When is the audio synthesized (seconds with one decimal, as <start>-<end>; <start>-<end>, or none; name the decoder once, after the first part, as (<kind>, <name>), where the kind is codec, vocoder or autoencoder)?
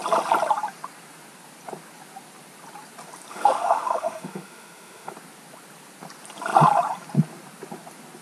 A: 3.3-5.1 (autoencoder, DAC-VAE)